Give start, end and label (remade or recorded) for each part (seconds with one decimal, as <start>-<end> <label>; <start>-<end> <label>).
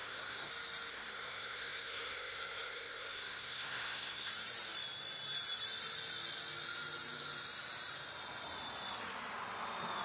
0.0-0.5 remade; 0.5-0.9 recorded; 0.9-4.3 remade; 4.3-10.0 recorded